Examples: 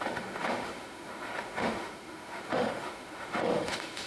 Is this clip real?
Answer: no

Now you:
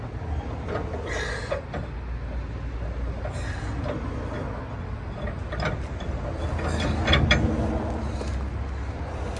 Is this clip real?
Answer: yes